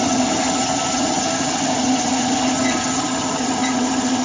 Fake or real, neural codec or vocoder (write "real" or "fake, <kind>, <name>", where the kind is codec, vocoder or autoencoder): fake, vocoder, HiFi-GAN